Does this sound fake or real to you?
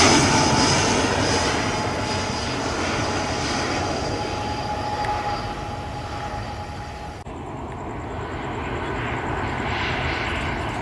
real